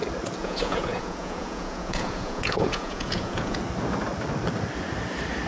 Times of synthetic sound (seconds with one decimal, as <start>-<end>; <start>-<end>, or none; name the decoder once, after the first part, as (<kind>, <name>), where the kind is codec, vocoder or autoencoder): 0.4-3.6 (vocoder, Vocos)